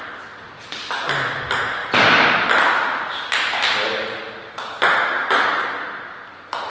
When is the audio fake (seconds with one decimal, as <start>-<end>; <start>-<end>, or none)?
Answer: none